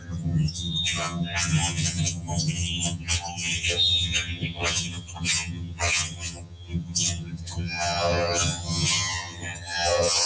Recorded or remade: remade